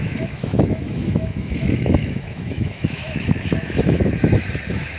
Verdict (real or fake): fake